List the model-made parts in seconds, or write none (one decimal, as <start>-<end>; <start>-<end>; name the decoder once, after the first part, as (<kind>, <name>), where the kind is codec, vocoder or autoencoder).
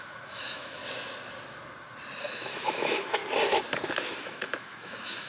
0.0-0.8 (autoencoder, DAC-VAE); 2.2-3.2; 4.2-5.3